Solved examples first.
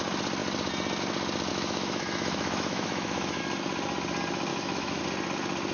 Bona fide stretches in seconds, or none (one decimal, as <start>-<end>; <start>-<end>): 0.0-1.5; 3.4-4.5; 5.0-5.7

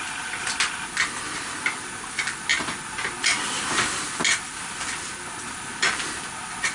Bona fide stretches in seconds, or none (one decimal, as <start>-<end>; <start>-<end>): 0.0-6.7

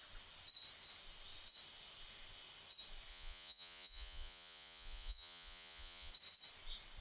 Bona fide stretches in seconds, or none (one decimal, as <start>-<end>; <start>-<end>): 0.0-3.1; 6.1-7.0

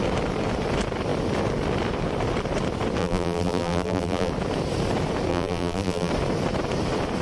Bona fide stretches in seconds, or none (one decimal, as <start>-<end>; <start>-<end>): 0.0-3.0; 4.3-5.3; 6.1-7.2

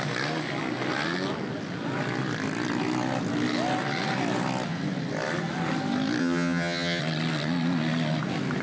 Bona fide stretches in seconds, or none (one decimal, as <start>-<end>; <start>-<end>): 0.0-6.2; 7.0-8.6

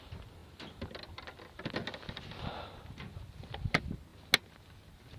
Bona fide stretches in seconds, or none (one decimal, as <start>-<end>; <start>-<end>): 0.0-5.2

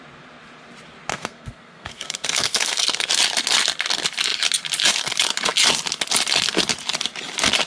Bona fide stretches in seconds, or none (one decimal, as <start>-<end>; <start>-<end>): 0.0-1.1; 3.1-7.7